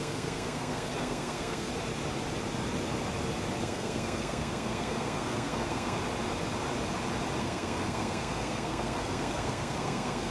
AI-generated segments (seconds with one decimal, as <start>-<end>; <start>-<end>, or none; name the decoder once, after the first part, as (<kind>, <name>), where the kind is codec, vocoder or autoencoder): 0.0-1.7 (codec, SNAC); 3.6-6.0; 7.4-10.3